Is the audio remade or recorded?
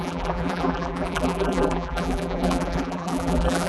remade